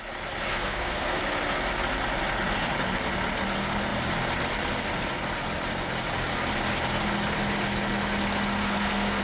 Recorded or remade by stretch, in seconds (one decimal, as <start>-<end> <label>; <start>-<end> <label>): 0.0-0.5 recorded; 0.5-1.2 remade; 1.2-8.6 recorded; 8.6-9.2 remade